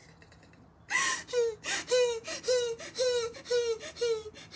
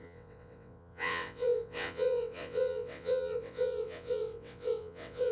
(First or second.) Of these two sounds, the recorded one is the first